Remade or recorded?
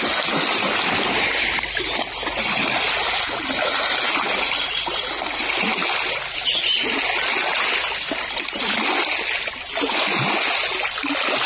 recorded